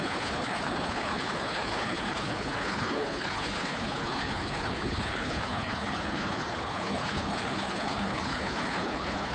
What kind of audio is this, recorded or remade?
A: remade